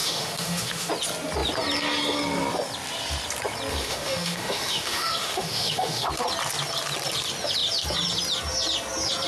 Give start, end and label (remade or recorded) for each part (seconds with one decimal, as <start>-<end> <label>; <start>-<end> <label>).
0.0-0.9 remade; 0.9-3.7 recorded; 3.7-6.1 remade; 6.1-9.3 recorded